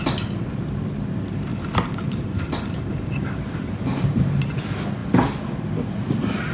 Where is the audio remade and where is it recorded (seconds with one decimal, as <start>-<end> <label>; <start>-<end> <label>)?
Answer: 0.0-1.5 recorded; 1.5-4.4 remade; 4.4-6.5 recorded